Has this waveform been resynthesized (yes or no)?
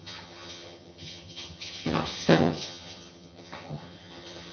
yes